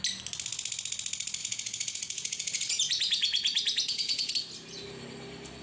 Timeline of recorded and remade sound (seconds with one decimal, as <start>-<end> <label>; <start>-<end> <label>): 0.0-1.4 recorded; 1.4-4.3 remade; 4.3-5.6 recorded